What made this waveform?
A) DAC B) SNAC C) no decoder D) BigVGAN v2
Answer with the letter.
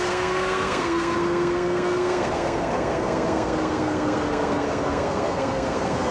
B